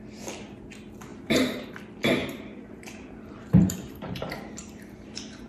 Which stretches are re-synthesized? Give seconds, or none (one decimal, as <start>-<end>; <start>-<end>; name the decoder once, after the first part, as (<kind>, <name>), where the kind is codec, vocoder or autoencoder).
1.1-1.7 (vocoder, BigVGAN v2); 2.2-5.5